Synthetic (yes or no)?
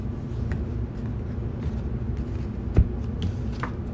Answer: no